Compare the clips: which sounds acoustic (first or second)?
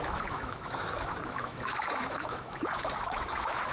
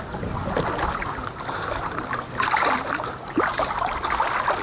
second